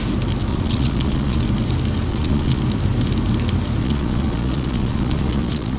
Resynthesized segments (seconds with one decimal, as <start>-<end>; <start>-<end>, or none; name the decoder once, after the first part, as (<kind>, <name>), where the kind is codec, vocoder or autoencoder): 0.5-1.4 (vocoder, Vocos); 2.1-2.6; 3.8-5.8